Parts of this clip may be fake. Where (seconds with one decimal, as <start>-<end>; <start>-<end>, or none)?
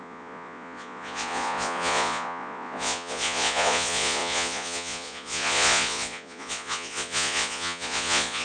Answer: 0.0-8.4